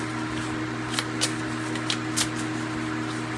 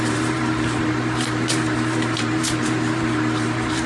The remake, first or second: second